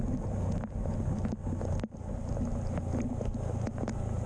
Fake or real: real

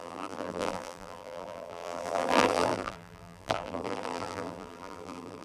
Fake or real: fake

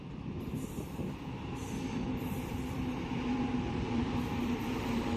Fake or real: fake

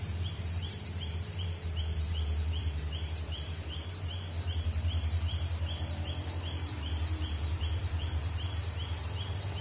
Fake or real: fake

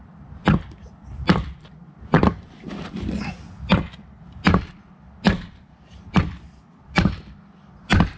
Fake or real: real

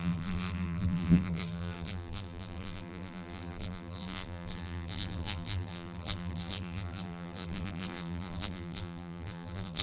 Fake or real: fake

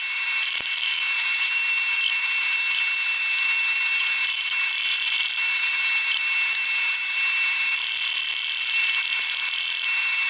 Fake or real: fake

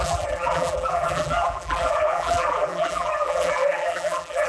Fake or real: fake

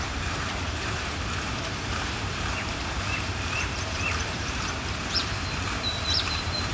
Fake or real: fake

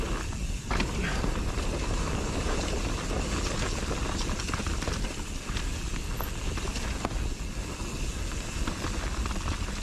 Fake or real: real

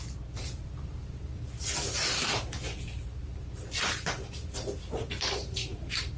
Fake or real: fake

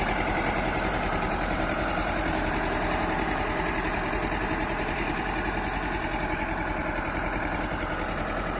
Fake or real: fake